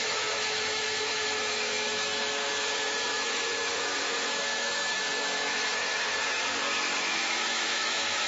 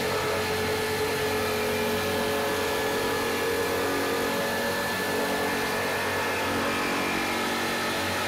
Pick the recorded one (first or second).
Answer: second